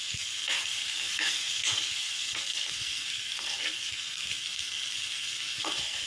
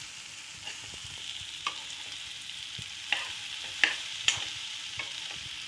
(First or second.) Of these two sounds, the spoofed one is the first